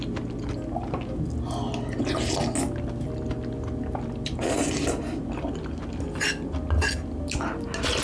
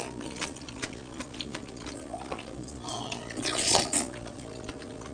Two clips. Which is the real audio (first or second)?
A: first